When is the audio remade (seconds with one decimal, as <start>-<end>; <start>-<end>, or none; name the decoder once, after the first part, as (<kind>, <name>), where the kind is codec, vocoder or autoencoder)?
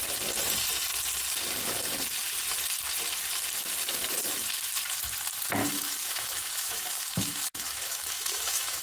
5.6-8.8 (autoencoder, DAC-VAE)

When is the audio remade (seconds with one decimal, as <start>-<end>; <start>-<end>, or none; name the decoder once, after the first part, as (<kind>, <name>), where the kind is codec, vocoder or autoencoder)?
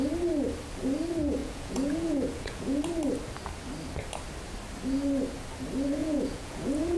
1.4-2.8 (vocoder, Vocos); 6.0-7.0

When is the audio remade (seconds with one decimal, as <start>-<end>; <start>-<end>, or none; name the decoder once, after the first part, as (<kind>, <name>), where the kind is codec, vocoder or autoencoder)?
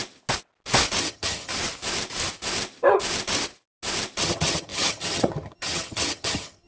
1.0-1.5 (vocoder, HiFi-GAN); 4.2-6.7